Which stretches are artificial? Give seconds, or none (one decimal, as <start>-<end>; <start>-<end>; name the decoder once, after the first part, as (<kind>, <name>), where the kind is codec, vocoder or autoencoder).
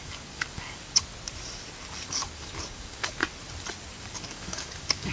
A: 0.0-1.1 (codec, DAC); 1.9-3.2; 4.0-5.1